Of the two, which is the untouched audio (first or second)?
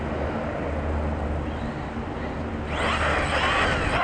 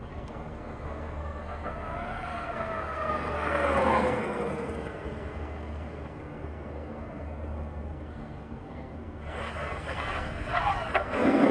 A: first